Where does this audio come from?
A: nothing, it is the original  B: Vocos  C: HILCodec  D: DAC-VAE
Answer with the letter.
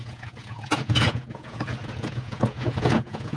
B